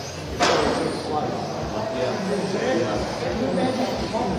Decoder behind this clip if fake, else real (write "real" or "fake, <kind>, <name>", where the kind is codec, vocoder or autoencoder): real